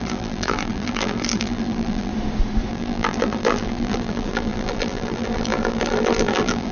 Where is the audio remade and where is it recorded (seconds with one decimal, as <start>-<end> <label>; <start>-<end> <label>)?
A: 0.0-2.1 remade; 2.1-2.7 recorded; 2.7-6.7 remade